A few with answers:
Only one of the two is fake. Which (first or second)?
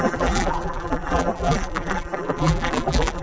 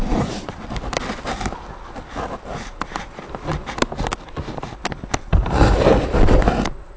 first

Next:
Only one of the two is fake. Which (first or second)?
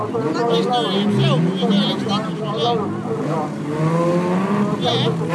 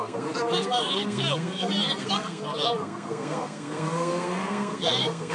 second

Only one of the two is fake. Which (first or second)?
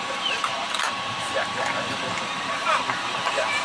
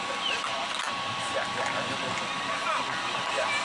first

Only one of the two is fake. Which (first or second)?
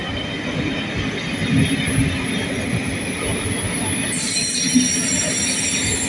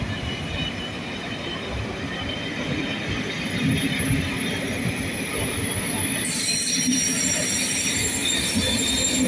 second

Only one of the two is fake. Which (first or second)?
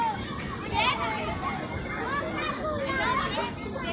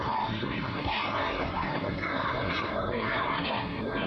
second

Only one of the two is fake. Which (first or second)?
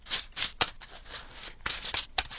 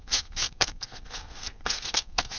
second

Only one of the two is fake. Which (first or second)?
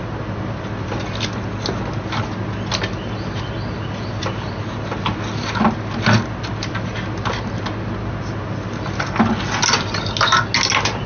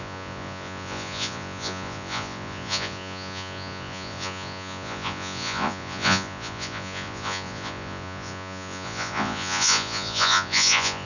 second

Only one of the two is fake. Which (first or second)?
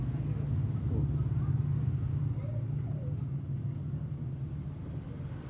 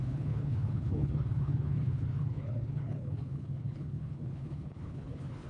second